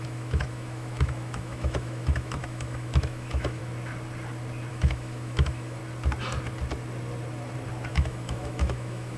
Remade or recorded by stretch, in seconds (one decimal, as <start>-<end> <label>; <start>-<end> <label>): 0.0-3.6 remade; 3.6-4.7 recorded; 4.7-5.8 remade; 5.8-7.9 recorded; 7.9-9.2 remade